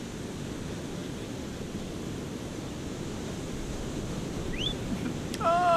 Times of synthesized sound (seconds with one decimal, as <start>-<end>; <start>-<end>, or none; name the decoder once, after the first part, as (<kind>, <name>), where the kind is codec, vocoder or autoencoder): 1.0-2.3 (vocoder, BigVGAN v2)